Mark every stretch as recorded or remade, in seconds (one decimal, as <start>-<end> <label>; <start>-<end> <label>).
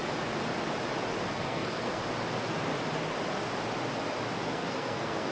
0.0-1.3 recorded; 1.3-2.0 remade; 2.0-4.4 recorded; 4.4-5.3 remade